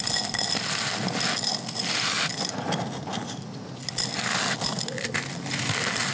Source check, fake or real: real